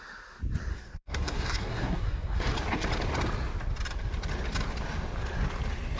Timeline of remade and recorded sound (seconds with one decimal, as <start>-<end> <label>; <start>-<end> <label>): 0.0-0.7 recorded; 0.7-2.5 remade; 2.5-6.0 recorded

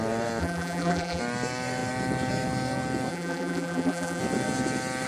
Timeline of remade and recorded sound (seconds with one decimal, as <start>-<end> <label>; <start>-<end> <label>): 0.0-0.4 recorded; 0.4-1.2 remade; 1.2-3.1 recorded; 3.1-4.2 remade; 4.2-5.1 recorded

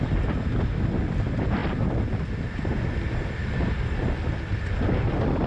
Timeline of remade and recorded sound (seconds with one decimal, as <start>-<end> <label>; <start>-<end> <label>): 0.0-5.5 recorded

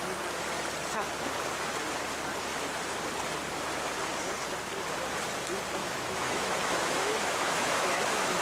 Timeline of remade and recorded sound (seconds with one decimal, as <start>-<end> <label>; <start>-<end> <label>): 0.0-5.8 recorded; 5.8-8.4 remade

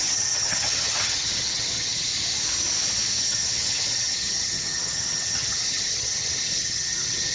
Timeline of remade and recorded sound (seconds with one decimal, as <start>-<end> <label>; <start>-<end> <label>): 0.0-2.1 remade; 2.1-3.2 recorded; 3.2-7.3 remade